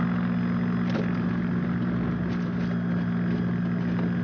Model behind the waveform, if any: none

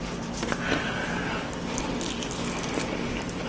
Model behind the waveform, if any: none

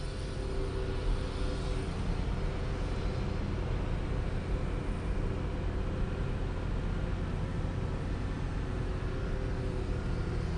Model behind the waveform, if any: none